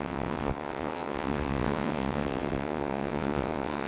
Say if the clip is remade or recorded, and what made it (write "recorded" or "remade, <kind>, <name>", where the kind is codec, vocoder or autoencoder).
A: remade, vocoder, WaveNeXt